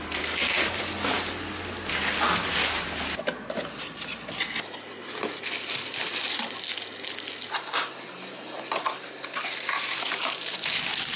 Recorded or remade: recorded